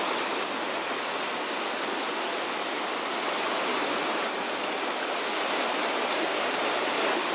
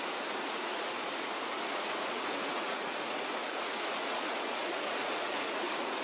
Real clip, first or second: first